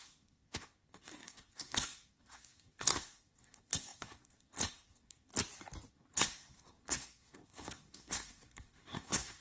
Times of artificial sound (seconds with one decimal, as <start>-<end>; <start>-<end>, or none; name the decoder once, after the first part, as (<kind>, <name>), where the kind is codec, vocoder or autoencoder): 0.0-5.3 (codec, SNAC); 5.9-9.4